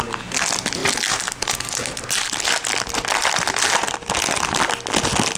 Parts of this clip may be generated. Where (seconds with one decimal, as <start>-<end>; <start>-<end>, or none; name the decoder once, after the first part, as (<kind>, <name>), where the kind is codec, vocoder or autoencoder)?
none